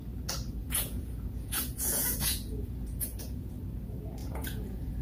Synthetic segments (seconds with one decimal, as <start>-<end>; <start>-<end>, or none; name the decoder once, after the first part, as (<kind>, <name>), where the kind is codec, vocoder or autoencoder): 0.6-3.6 (vocoder, Vocos); 4.2-5.0